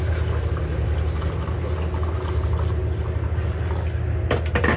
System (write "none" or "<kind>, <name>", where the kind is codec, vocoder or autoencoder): none